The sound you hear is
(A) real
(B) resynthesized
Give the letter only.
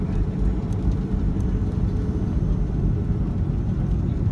B